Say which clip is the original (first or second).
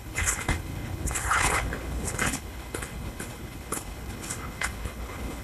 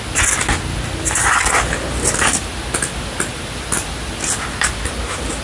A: second